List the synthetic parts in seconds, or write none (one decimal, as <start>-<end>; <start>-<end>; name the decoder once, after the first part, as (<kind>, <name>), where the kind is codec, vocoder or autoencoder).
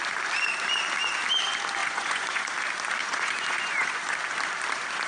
1.8-2.5 (vocoder, Vocos); 3.0-4.0